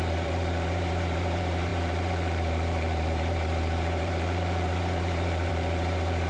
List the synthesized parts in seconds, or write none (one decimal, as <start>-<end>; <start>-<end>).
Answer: 0.0-6.3